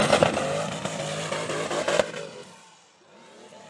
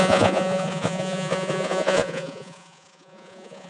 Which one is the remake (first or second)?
second